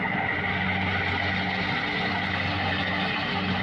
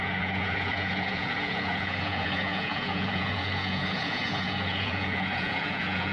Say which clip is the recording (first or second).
first